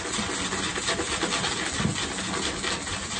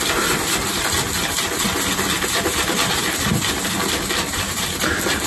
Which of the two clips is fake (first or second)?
second